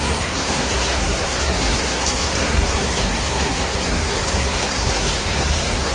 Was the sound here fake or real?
fake